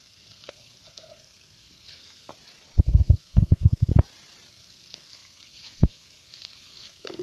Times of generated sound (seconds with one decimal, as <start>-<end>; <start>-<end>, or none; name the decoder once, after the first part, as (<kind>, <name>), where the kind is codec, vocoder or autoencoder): 0.0-2.3 (codec, SNAC); 2.8-3.9; 4.5-7.2